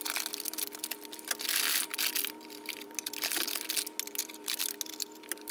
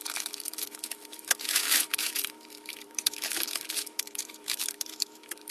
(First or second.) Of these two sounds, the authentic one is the first